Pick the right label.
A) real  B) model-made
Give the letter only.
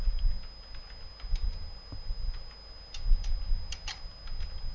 A